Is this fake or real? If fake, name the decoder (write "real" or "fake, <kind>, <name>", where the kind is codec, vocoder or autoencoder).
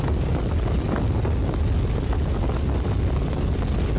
real